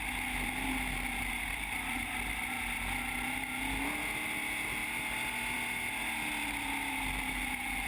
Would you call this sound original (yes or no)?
yes